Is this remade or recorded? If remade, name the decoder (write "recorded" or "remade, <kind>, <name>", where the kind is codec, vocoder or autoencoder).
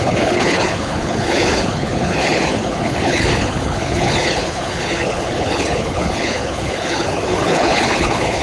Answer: remade, codec, HILCodec